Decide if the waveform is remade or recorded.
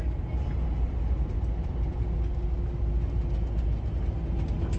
recorded